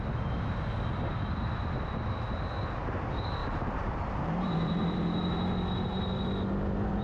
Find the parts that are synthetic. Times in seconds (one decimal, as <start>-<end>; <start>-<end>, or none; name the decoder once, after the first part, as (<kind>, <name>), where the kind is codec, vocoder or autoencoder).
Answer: 3.4-5.5 (vocoder, BigVGAN v2)